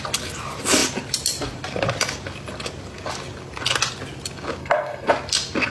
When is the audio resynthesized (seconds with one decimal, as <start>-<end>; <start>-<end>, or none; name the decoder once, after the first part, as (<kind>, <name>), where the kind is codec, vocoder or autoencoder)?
4.6-5.1 (codec, SNAC)